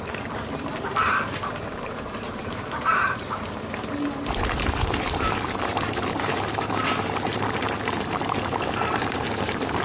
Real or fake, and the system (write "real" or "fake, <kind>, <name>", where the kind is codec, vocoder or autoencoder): fake, vocoder, BigVGAN v2